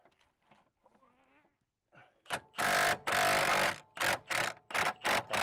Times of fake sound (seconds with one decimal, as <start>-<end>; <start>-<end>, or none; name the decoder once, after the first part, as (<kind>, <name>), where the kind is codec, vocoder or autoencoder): none